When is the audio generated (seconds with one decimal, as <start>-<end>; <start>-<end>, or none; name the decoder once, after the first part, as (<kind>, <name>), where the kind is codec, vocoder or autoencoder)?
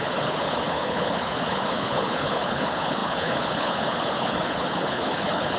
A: 0.0-5.6 (codec, HILCodec)